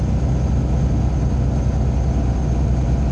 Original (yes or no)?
yes